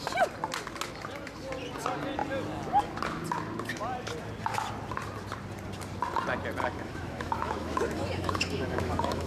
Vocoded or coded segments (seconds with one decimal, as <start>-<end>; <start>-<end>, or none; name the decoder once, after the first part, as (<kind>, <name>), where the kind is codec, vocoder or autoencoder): 6.6-9.3 (autoencoder, DAC-VAE)